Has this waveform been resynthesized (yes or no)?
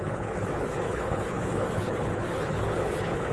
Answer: yes